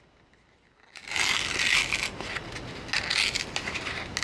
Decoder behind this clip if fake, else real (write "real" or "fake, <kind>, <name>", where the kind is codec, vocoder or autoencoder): real